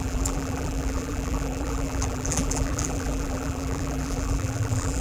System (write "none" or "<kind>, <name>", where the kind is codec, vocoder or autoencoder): vocoder, BigVGAN v2